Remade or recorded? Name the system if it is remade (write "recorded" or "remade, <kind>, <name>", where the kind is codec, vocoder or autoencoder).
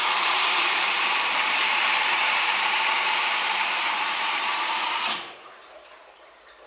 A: remade, vocoder, BigVGAN v2